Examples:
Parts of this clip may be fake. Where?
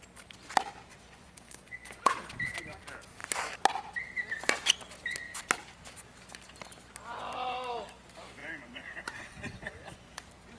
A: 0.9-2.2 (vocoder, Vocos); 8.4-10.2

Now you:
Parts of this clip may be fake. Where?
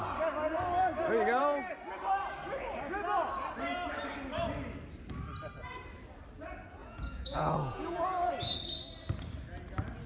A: 6.8-8.3 (vocoder, Vocos)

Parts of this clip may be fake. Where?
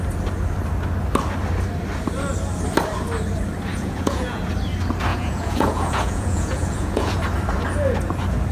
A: 3.7-4.4 (vocoder, Vocos); 5.1-7.2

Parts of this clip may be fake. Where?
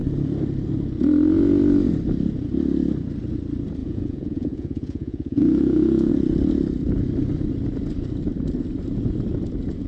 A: 3.8-6.1 (vocoder, Vocos)